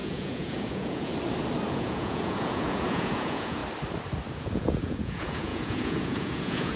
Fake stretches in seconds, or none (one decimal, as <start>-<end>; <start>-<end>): 0.0-1.1; 1.7-3.6; 4.3-6.8